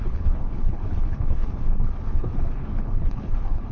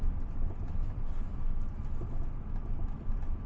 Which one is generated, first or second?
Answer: first